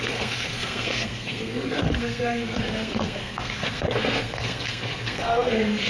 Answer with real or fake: fake